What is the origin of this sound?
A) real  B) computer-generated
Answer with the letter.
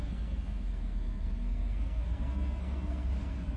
B